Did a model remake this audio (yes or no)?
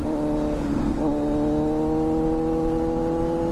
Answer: no